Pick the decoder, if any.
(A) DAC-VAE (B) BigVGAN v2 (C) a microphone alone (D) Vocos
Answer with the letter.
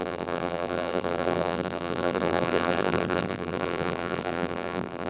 B